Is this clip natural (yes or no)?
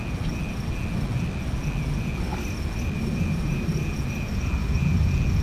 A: yes